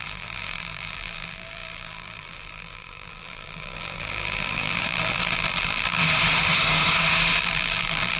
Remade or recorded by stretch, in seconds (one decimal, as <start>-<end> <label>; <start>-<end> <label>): 0.0-6.0 remade; 6.0-7.4 recorded; 7.4-8.2 remade